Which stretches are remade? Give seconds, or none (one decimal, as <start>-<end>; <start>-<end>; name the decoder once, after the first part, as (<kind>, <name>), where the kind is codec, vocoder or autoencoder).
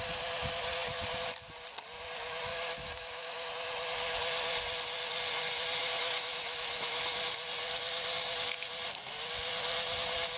2.5-3.5 (autoencoder, DAC-VAE); 5.8-7.0